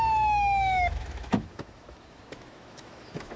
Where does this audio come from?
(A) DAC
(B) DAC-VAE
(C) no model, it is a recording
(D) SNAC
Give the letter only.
B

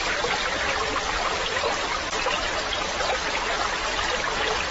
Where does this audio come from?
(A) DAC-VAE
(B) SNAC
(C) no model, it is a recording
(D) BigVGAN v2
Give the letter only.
C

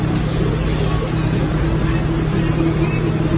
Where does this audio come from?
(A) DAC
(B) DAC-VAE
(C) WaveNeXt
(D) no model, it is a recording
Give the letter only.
D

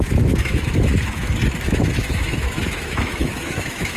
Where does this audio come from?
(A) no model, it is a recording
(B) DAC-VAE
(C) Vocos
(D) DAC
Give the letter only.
B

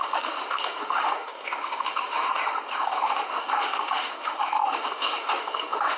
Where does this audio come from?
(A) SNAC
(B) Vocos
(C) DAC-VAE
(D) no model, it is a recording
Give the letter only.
C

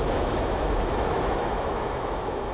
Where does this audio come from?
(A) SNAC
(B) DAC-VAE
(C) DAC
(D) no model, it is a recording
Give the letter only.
B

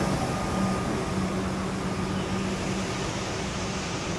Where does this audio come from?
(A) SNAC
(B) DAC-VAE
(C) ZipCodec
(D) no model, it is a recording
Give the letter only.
D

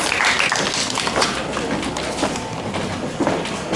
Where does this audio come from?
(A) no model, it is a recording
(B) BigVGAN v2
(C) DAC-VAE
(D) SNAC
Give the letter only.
A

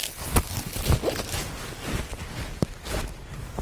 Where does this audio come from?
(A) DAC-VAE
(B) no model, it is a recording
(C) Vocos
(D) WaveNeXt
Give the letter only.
B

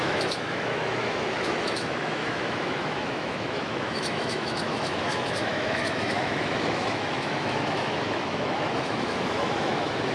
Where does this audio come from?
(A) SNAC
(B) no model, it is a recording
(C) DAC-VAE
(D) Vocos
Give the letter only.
C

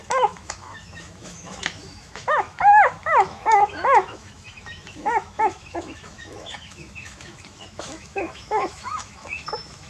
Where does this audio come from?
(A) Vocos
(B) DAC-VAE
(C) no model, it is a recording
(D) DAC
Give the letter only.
B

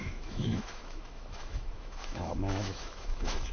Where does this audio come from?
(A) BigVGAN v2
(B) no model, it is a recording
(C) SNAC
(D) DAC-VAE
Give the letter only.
D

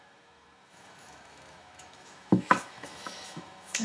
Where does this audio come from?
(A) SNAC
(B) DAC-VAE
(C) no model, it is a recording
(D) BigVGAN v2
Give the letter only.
B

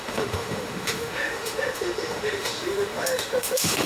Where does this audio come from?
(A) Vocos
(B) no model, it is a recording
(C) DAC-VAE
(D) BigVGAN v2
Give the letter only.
C